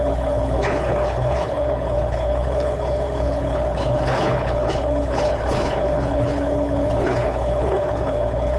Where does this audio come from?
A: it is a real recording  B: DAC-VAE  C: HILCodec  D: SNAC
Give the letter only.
C